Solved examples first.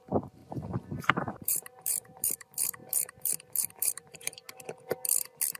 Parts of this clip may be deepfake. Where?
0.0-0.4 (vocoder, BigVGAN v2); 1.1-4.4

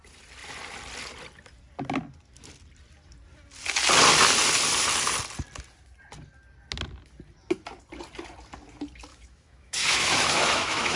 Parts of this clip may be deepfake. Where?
9.1-11.0 (autoencoder, DAC-VAE)

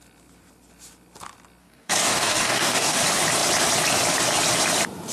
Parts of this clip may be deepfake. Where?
1.6-3.0 (codec, DAC)

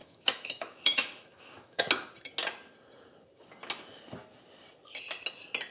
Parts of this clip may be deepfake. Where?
0.0-1.8 (autoencoder, DAC-VAE)

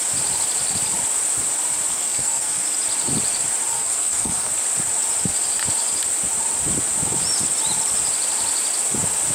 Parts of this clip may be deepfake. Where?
1.9-2.6 (codec, SNAC); 3.7-4.5